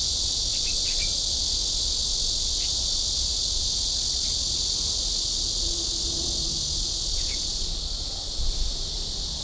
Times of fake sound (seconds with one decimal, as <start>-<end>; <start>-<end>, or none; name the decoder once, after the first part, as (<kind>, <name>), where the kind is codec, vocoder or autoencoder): none